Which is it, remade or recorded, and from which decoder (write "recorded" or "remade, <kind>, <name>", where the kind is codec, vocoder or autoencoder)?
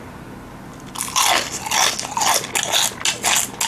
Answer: recorded